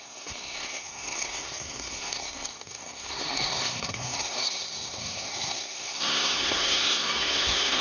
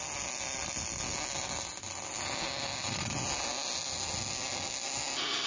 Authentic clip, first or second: second